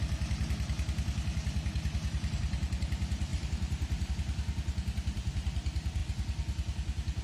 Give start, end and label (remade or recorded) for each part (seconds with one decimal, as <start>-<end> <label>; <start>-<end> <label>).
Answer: 0.0-3.3 recorded; 3.3-4.1 remade; 4.1-7.2 recorded